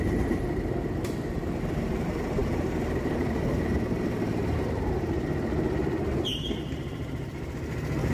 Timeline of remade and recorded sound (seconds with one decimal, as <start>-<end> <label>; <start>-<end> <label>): 0.0-8.1 remade